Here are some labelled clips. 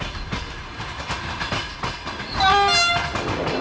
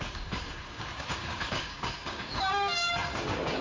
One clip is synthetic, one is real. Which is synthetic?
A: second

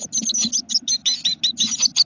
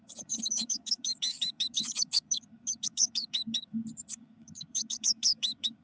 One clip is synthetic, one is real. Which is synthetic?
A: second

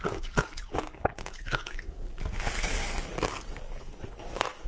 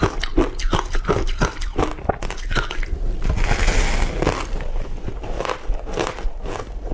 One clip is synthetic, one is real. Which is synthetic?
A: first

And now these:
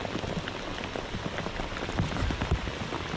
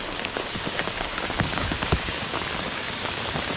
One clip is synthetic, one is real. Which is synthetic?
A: second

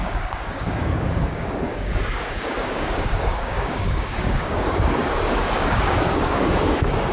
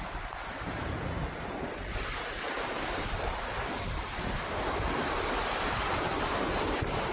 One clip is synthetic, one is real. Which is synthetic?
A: first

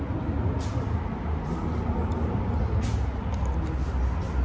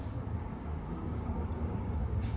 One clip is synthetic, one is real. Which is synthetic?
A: second